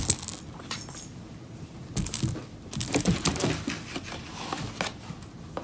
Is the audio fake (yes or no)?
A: no